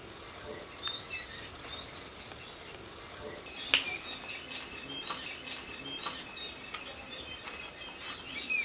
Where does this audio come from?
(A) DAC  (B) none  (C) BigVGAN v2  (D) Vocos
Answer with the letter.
B